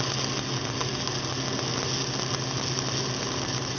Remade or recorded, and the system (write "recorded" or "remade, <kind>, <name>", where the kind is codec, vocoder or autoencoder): recorded